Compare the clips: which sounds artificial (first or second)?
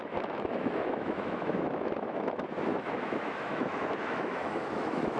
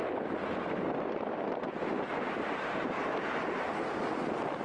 first